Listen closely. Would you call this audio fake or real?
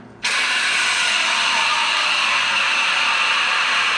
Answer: real